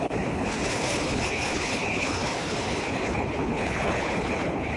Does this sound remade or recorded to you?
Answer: remade